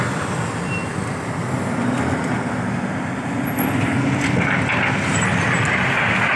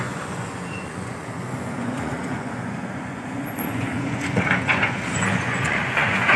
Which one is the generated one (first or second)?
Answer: second